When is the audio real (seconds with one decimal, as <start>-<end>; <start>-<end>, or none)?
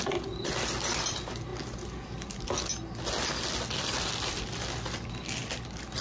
0.0-6.0